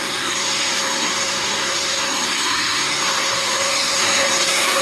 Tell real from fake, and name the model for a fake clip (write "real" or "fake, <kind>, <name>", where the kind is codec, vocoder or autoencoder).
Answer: fake, codec, SNAC